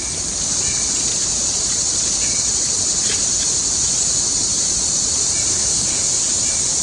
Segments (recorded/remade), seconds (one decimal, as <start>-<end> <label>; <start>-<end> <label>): 0.0-5.5 recorded; 5.5-6.0 remade; 6.0-6.8 recorded